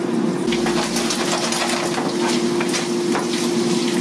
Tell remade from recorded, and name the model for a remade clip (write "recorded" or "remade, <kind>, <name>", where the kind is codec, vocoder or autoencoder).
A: recorded